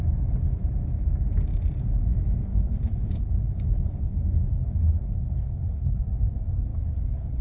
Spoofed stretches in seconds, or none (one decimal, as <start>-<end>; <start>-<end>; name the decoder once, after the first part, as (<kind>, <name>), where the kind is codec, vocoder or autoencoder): 2.5-6.0 (codec, HILCodec); 6.7-7.4